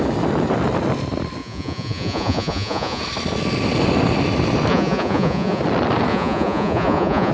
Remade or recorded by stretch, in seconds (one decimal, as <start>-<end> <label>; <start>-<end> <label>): 0.0-1.4 recorded; 1.4-3.0 remade; 3.0-4.7 recorded; 4.7-5.6 remade; 5.6-6.1 recorded; 6.1-7.3 remade